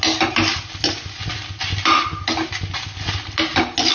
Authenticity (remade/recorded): recorded